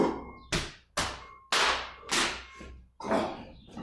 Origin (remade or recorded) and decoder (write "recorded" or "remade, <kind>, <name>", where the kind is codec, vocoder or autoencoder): recorded